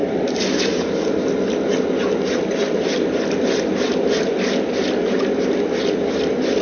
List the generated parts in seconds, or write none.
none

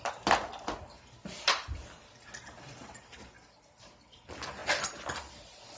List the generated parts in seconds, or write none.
none